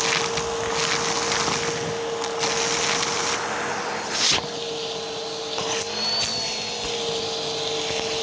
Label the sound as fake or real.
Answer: real